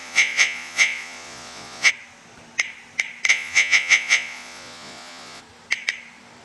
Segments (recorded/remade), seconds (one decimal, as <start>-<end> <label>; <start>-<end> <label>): 0.0-1.9 remade; 1.9-3.3 recorded; 3.3-5.4 remade; 5.4-6.4 recorded